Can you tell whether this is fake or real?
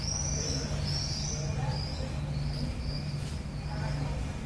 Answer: real